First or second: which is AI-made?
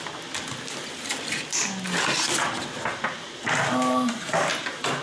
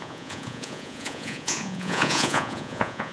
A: second